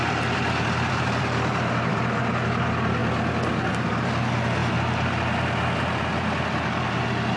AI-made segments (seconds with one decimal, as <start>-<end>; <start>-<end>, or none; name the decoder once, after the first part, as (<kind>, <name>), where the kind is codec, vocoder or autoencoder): 0.0-3.0 (vocoder, BigVGAN v2); 3.7-4.6; 6.1-7.4